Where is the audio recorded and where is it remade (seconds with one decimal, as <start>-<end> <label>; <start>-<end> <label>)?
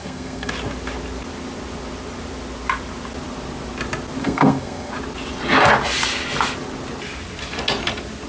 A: 0.0-0.5 remade; 0.5-4.2 recorded; 4.2-4.9 remade; 4.9-8.3 recorded